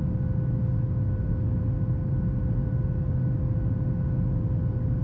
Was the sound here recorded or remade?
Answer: recorded